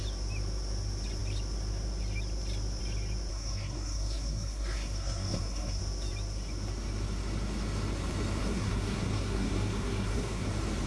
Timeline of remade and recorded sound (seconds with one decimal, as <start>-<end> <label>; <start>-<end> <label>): 0.0-3.3 recorded; 3.3-5.8 remade; 5.8-8.4 recorded; 8.4-10.5 remade; 10.5-10.9 recorded